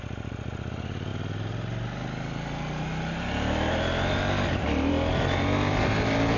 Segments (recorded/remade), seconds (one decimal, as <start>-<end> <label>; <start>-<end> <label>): 0.0-6.4 recorded